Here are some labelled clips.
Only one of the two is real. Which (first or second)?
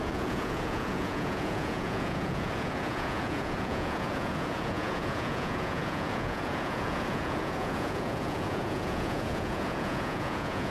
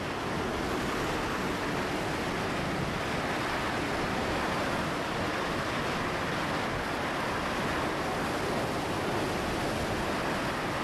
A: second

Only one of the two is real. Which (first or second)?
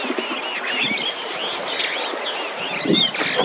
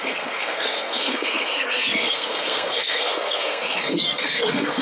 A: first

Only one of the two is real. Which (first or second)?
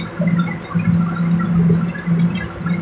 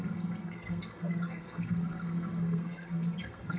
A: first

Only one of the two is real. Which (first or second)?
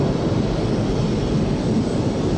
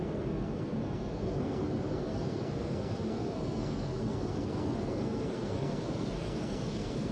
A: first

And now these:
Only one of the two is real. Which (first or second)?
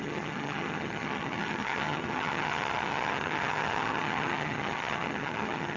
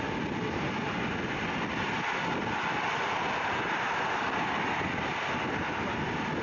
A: second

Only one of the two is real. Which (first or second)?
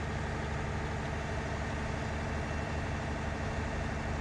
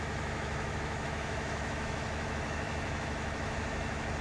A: first